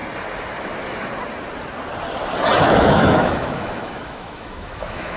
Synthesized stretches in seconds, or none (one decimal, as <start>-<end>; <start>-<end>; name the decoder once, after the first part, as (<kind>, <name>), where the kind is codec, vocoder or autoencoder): 2.6-5.2 (autoencoder, DAC-VAE)